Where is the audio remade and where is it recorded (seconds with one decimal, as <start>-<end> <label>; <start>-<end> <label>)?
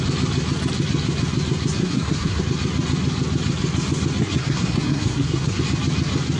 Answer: 0.0-1.8 recorded; 1.8-2.4 remade; 2.4-4.2 recorded; 4.2-5.6 remade; 5.6-6.4 recorded